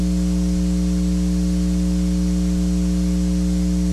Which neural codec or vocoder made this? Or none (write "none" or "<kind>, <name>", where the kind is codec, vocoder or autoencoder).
none